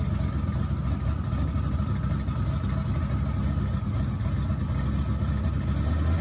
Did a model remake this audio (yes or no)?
no